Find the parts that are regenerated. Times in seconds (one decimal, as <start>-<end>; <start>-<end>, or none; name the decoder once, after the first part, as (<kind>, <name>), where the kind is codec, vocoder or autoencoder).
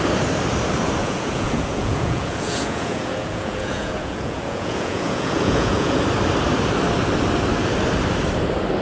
1.0-6.0 (vocoder, Vocos)